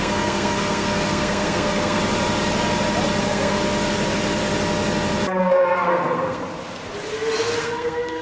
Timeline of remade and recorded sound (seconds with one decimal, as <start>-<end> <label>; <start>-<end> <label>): 0.0-2.0 remade; 2.0-3.2 recorded; 3.2-3.6 remade; 3.6-5.4 recorded; 5.4-6.4 remade; 6.4-7.6 recorded; 7.6-8.2 remade